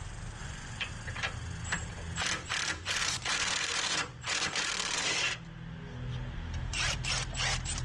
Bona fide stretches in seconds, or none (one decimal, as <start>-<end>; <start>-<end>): 0.0-0.4; 0.9-2.8; 4.7-7.8